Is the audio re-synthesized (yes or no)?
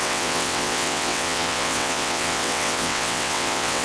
yes